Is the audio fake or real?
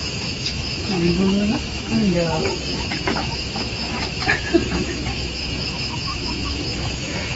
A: fake